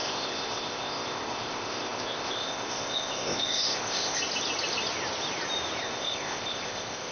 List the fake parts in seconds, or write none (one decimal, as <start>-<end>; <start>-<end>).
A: 0.0-4.2; 5.8-7.1